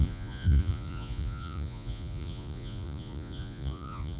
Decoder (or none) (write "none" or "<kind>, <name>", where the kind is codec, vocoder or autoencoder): vocoder, Vocos